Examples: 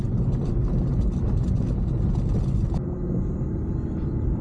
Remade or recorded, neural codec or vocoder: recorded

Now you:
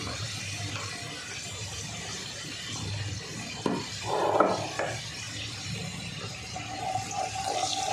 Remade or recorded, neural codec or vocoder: recorded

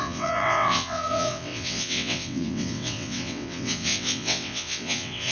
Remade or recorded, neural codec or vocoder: remade, vocoder, WaveNeXt